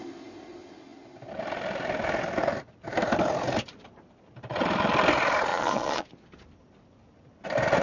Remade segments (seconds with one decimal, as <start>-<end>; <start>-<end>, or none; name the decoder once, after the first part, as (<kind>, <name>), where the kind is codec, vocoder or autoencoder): 5.5-6.1 (vocoder, Vocos)